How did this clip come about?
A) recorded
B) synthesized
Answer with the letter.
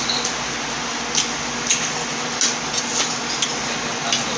A